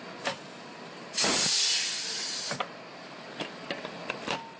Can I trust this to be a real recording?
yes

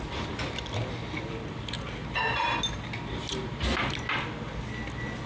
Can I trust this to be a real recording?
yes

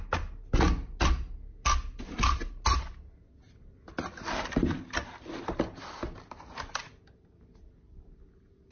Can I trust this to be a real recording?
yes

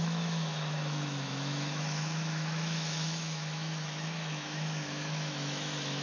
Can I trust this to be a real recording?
no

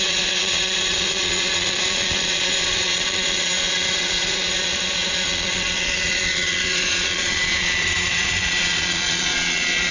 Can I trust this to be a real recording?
no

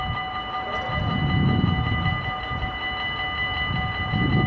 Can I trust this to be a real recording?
yes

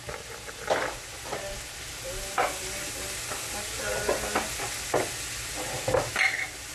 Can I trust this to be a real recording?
yes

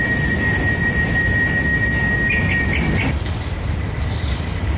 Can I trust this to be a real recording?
yes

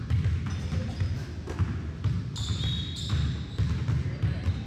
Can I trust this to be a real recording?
yes